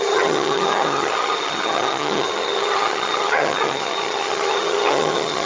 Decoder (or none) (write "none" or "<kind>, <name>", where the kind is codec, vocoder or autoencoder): vocoder, HiFi-GAN